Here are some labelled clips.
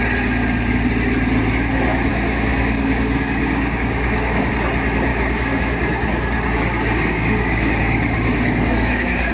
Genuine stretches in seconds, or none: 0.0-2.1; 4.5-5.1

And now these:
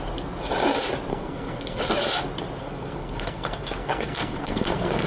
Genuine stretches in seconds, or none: 0.0-1.1; 1.8-2.6

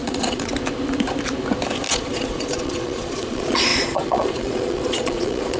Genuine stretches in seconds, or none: 0.5-1.9